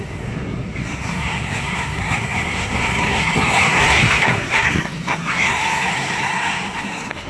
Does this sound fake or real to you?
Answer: fake